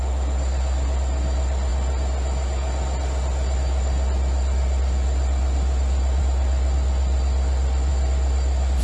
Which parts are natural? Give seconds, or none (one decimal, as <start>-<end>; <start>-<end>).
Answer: 0.0-8.8